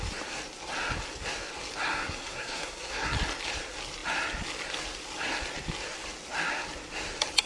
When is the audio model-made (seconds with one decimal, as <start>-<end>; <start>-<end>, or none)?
1.8-3.1